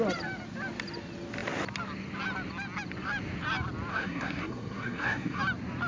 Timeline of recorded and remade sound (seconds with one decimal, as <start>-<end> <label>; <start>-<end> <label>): 0.0-3.9 recorded; 3.9-5.4 remade; 5.4-5.9 recorded